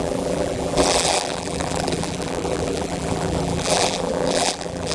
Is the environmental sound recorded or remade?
remade